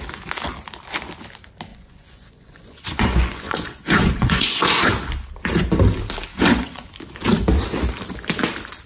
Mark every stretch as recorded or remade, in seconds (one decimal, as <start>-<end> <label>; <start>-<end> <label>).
0.0-1.7 recorded; 1.7-4.8 remade; 4.8-6.3 recorded; 6.3-6.9 remade; 6.9-8.9 recorded